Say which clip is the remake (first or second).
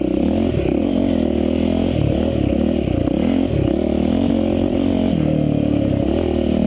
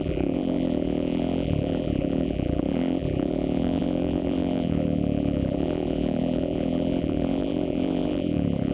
second